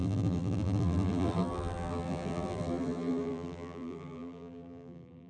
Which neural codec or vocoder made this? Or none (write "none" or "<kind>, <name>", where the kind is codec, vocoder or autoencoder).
vocoder, BigVGAN v2